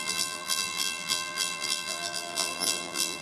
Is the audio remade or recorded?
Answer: remade